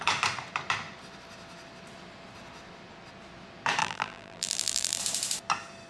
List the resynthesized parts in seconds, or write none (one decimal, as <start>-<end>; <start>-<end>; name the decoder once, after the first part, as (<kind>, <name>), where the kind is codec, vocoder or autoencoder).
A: 3.8-5.0 (vocoder, BigVGAN v2)